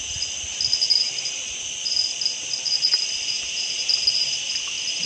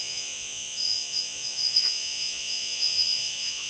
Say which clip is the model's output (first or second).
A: second